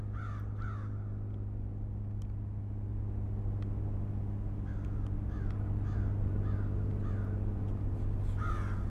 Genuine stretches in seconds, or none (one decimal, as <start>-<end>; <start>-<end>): 0.0-8.9